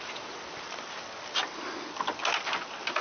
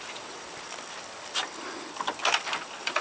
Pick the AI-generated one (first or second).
second